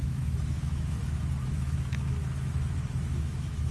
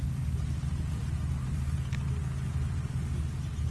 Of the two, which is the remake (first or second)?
first